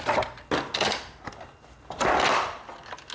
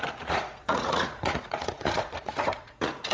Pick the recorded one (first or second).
first